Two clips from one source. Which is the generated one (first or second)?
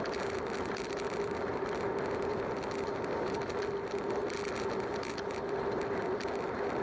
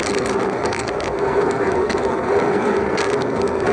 second